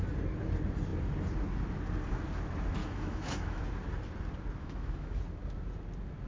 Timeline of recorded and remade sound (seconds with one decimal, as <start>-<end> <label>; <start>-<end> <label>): 0.0-2.8 recorded; 2.8-3.6 remade; 3.6-4.6 recorded; 4.6-5.2 remade; 5.2-6.3 recorded